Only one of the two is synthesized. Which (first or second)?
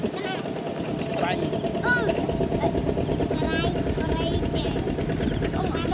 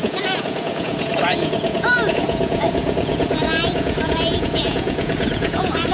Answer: second